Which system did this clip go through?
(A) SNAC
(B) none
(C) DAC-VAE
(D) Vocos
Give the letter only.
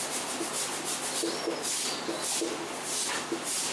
B